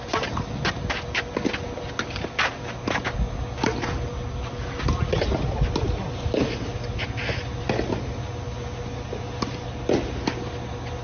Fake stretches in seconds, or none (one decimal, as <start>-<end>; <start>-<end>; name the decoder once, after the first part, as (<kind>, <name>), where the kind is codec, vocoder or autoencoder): none